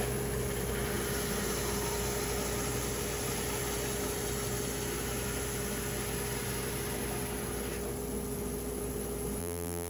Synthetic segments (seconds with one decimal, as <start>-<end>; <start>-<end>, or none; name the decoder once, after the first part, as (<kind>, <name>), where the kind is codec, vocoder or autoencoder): 9.4-9.9 (vocoder, BigVGAN v2)